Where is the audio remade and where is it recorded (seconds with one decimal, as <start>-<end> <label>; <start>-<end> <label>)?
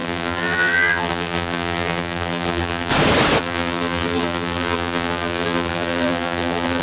0.0-2.9 remade; 2.9-3.4 recorded; 3.4-6.8 remade